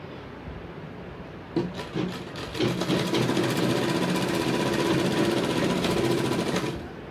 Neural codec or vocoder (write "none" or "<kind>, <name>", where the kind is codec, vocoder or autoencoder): none